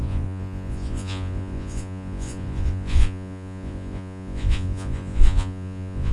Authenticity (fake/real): fake